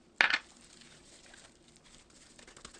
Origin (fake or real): real